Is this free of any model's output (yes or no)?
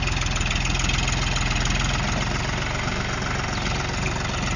yes